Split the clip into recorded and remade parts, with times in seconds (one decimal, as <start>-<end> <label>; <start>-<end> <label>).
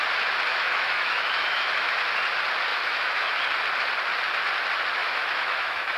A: 0.0-0.5 recorded; 0.5-2.0 remade; 2.0-2.7 recorded; 2.7-3.3 remade; 3.3-5.0 recorded; 5.0-6.0 remade